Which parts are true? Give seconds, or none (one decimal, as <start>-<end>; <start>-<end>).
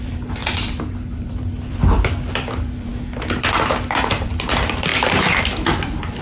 2.9-3.7; 4.9-5.4